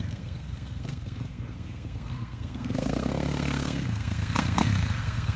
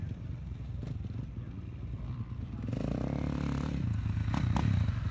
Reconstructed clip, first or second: first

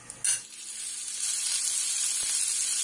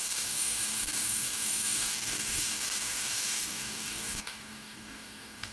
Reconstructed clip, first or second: second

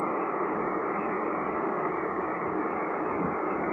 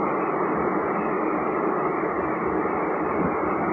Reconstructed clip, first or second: first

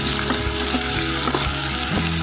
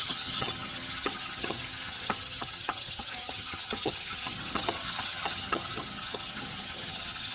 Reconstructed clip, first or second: second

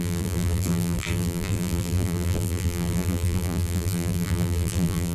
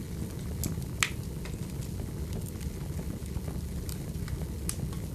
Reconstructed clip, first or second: first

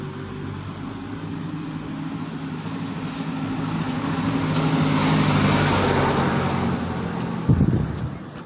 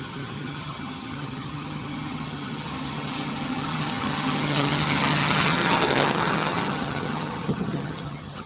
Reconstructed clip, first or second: second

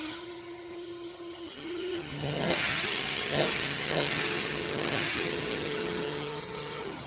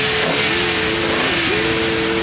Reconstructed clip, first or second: first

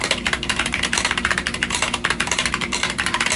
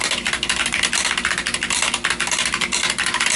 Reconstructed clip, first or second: first